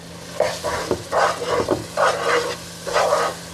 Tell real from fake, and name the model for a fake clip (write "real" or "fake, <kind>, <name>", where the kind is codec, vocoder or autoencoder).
real